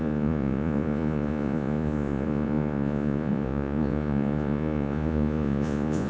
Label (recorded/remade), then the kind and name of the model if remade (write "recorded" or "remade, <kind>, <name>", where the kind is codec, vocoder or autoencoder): remade, vocoder, Vocos